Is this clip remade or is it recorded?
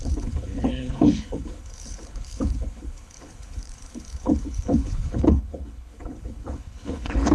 remade